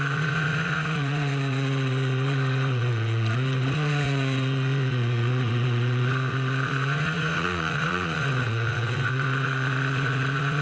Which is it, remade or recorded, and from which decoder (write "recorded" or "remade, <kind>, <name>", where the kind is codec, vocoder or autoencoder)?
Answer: remade, vocoder, Vocos